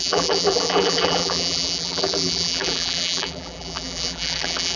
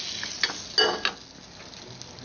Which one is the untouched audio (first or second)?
second